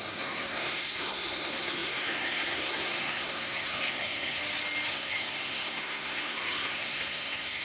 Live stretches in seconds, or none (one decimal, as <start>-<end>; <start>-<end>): 4.4-4.9